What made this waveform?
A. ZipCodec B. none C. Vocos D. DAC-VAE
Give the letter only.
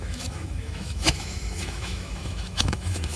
D